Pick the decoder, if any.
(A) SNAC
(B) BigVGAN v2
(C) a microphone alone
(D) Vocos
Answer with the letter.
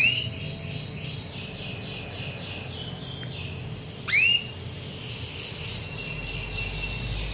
C